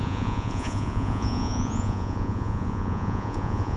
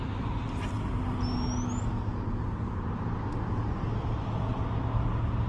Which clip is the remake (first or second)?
first